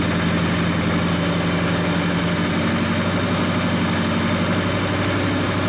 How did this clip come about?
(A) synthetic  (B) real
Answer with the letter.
B